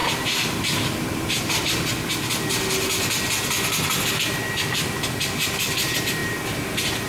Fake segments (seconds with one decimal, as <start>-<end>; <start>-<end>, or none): none